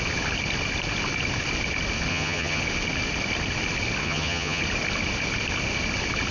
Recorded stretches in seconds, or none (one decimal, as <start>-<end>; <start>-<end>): 0.0-2.1; 2.6-4.0; 4.6-6.3